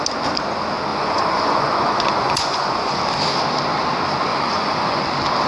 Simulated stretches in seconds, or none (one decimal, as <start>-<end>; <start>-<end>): 0.9-3.0; 4.3-5.0